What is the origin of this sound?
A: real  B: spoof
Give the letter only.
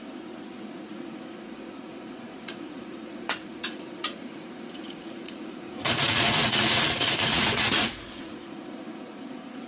B